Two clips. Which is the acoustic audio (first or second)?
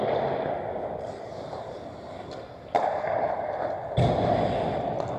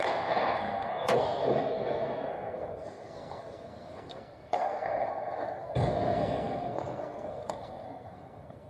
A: first